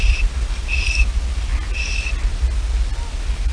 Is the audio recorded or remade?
recorded